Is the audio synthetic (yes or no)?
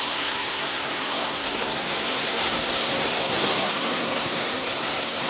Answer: yes